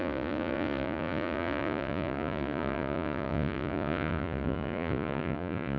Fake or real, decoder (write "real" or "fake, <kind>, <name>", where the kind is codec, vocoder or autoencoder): fake, vocoder, Vocos